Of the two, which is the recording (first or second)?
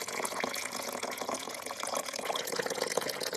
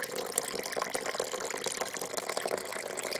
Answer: second